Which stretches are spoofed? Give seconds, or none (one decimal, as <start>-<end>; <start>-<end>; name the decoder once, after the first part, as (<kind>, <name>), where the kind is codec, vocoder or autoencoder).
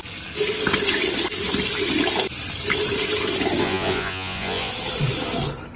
3.6-4.7 (vocoder, Vocos)